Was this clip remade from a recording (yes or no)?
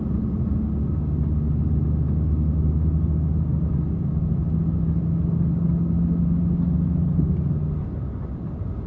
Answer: no